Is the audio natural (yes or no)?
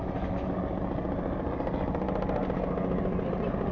yes